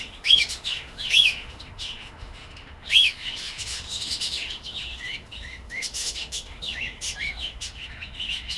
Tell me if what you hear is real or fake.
fake